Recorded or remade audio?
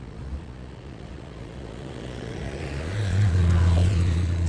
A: remade